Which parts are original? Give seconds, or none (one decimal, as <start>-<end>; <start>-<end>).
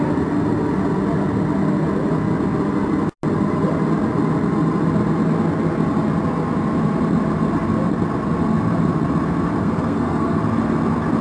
0.0-9.6; 10.4-11.2